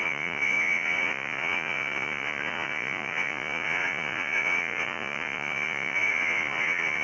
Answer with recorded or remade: remade